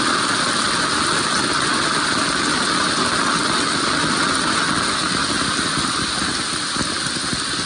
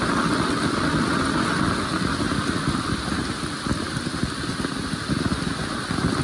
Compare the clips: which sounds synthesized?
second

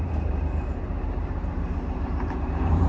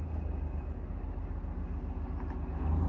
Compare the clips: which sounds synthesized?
first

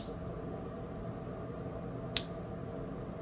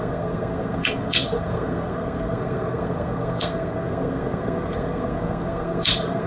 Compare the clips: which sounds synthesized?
second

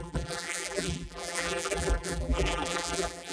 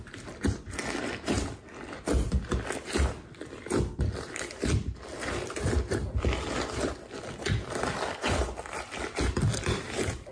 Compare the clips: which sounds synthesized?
first